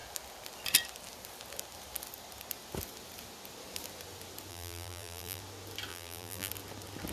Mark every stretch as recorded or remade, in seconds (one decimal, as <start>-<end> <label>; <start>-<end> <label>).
0.0-4.5 recorded; 4.5-5.4 remade; 5.4-5.9 recorded; 5.9-6.5 remade; 6.5-7.1 recorded